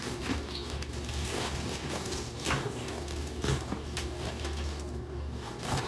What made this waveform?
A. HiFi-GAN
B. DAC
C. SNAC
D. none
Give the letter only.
B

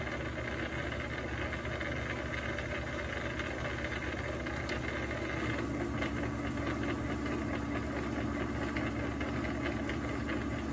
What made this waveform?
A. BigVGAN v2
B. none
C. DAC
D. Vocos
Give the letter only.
B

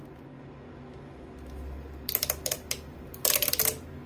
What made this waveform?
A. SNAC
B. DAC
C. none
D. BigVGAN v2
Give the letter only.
C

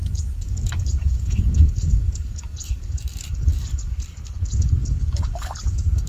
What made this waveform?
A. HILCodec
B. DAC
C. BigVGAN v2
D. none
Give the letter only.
B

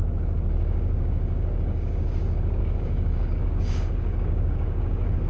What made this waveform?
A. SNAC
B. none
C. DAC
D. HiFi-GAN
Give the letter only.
C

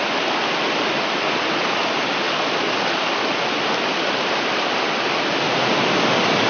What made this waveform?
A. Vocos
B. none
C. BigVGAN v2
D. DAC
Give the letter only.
B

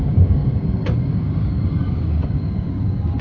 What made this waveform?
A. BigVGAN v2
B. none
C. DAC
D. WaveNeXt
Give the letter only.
C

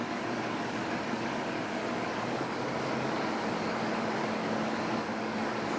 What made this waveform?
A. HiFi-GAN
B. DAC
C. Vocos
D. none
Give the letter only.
B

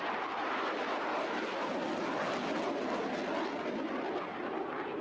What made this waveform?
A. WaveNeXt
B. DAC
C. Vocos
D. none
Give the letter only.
D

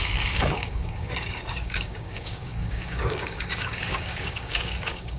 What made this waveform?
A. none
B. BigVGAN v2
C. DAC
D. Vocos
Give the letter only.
C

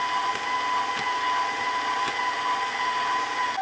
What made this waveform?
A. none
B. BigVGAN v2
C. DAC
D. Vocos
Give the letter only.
A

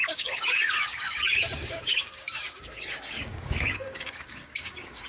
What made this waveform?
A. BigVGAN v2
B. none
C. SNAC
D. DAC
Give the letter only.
D